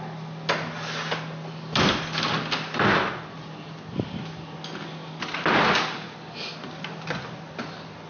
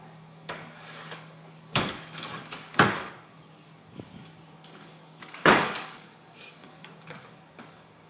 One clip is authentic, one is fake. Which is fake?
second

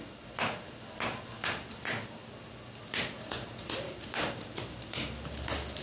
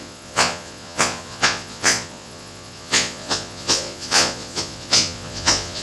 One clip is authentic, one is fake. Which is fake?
second